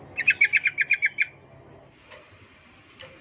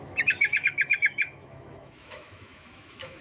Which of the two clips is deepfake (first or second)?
second